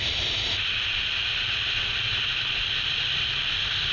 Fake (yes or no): yes